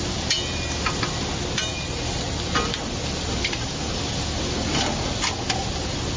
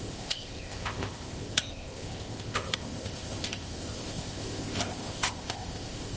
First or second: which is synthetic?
second